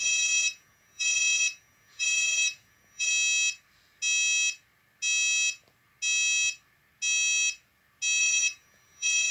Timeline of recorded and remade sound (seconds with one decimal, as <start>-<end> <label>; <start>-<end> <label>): 0.0-3.1 remade; 3.1-8.2 recorded; 8.2-9.3 remade